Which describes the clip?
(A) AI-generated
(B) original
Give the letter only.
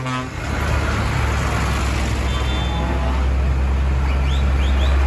B